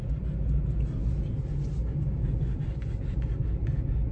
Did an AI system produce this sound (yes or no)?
no